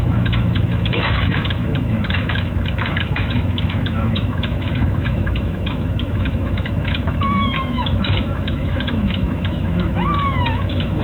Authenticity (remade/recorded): remade